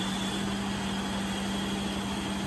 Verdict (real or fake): real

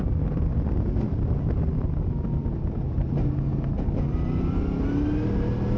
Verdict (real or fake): real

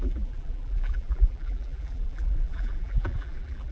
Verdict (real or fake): fake